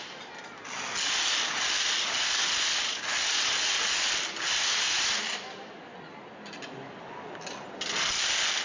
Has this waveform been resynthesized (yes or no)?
no